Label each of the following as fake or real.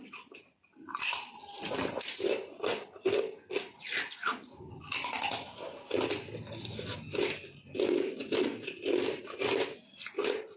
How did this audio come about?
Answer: real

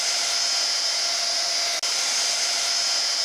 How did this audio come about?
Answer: real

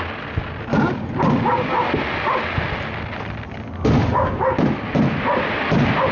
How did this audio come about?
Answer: real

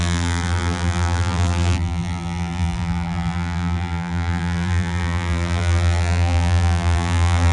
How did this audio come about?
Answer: fake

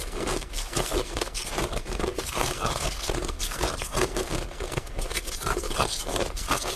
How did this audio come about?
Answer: fake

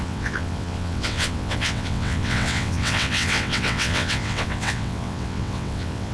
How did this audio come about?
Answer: fake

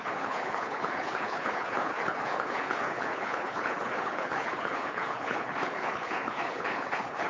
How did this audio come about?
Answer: fake